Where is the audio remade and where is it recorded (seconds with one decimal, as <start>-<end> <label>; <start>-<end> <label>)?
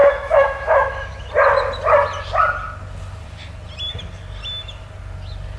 0.0-1.3 remade; 1.3-5.6 recorded